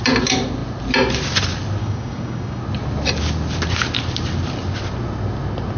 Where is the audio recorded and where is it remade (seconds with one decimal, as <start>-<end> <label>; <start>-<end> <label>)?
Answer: 0.0-1.8 recorded; 1.8-2.6 remade; 2.6-5.8 recorded